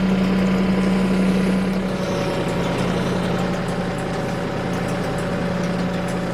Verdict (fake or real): real